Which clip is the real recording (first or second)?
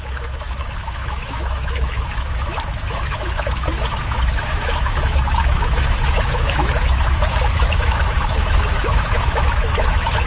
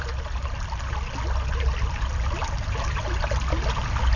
second